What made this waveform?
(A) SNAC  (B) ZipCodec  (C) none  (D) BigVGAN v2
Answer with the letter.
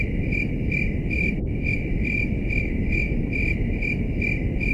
C